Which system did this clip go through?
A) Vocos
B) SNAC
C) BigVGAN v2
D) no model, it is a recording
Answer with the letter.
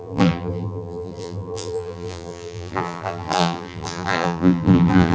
C